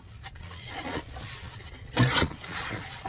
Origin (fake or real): fake